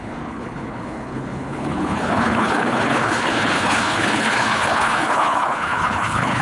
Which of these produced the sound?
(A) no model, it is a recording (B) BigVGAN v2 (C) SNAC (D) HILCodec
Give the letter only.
D